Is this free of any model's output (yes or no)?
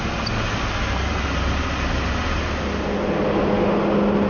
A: yes